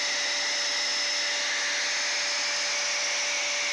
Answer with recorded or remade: recorded